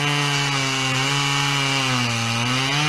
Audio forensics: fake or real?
real